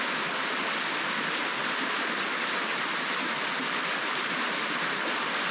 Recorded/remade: recorded